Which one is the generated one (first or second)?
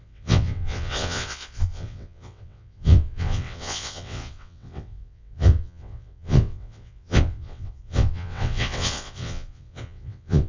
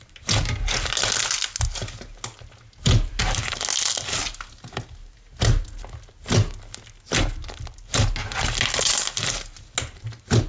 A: first